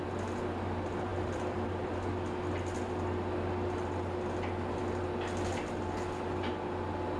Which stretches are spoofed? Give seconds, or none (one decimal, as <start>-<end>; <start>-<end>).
1.1-2.1